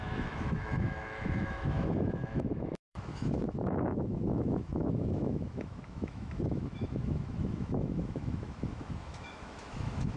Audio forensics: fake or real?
fake